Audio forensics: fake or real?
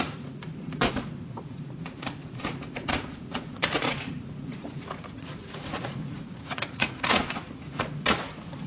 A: fake